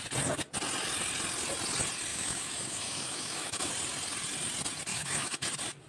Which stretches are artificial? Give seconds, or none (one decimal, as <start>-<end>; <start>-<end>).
2.1-3.7; 4.9-5.5